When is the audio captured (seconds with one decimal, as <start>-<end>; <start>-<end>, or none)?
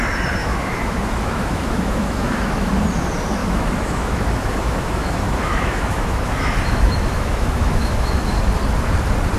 0.0-0.4; 2.8-3.4; 8.4-9.4